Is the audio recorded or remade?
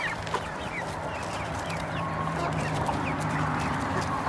remade